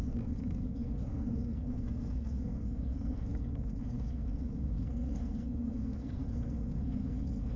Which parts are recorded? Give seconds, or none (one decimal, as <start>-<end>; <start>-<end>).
none